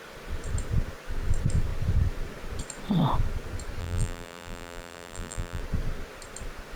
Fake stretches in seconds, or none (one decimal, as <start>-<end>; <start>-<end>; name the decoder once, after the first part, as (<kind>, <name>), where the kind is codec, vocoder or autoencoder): 3.8-5.6 (vocoder, BigVGAN v2)